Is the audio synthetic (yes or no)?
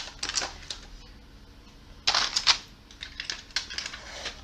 no